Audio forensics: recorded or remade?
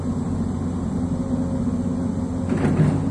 recorded